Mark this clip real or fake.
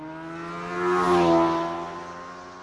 real